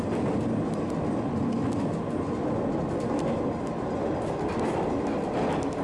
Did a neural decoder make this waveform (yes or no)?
no